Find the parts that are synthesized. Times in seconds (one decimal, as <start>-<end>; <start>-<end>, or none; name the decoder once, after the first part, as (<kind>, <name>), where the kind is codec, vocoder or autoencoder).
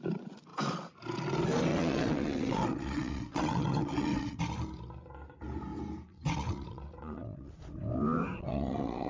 1.7-4.4 (vocoder, WaveNeXt); 6.1-7.5; 8.4-9.1